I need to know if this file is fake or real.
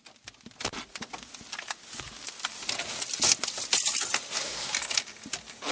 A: real